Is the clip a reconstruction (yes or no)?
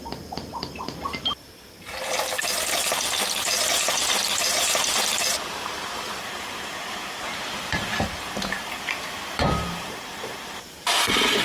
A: yes